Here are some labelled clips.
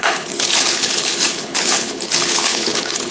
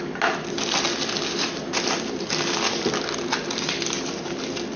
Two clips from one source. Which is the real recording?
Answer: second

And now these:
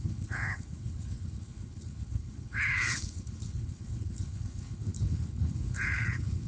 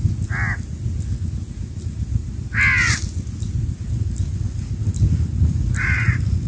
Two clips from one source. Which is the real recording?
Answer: second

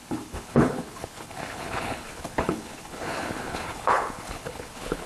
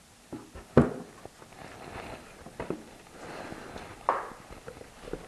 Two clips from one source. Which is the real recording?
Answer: second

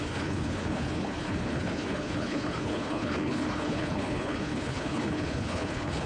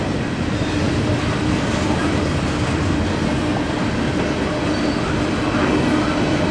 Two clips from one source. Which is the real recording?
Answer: second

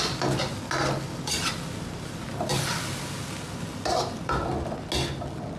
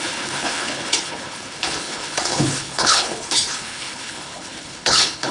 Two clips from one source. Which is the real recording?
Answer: first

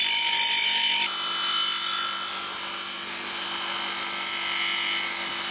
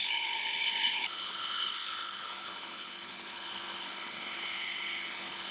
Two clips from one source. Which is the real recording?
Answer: first